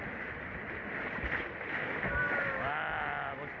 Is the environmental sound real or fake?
real